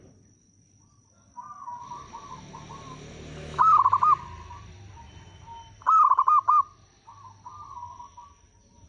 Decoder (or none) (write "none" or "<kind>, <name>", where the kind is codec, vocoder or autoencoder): none